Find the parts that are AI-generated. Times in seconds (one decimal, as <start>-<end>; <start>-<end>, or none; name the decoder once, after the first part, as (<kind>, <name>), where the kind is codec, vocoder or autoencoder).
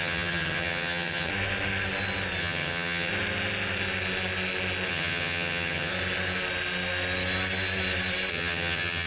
0.0-1.3 (vocoder, HiFi-GAN); 2.4-3.1; 4.9-5.9; 8.3-9.1